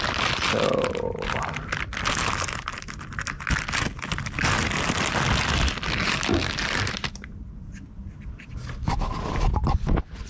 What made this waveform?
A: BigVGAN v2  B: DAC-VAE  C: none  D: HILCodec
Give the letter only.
C